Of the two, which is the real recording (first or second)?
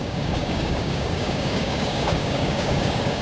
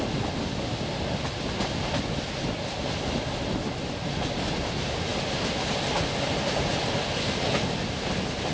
second